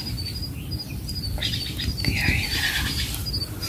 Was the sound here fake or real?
real